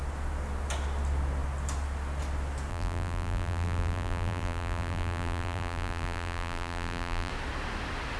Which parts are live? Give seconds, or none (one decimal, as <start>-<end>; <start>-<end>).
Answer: 0.0-2.7; 7.3-8.2